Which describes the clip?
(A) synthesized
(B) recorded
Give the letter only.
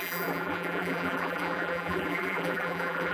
A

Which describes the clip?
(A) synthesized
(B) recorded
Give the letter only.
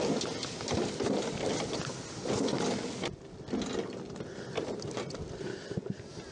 B